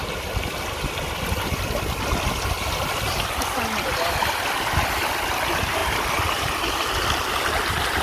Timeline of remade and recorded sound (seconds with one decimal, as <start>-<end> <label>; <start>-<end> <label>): 0.0-5.8 recorded; 5.8-7.5 remade; 7.5-8.0 recorded